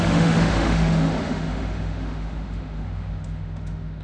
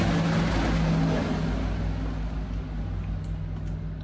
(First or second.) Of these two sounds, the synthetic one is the first